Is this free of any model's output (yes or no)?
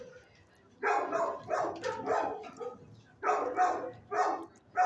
yes